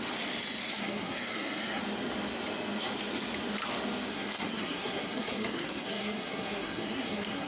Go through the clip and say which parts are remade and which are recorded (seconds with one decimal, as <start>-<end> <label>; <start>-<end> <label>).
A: 0.0-0.6 recorded; 0.6-1.8 remade; 1.8-4.1 recorded; 4.1-7.5 remade